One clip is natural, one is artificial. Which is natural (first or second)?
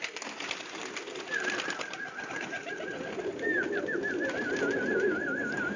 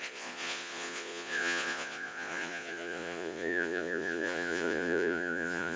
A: first